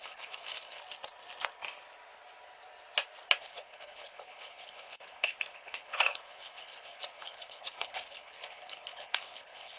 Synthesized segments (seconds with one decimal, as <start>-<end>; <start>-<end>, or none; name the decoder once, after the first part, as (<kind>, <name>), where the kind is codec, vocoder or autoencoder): 0.0-0.8 (codec, HILCodec); 3.4-9.8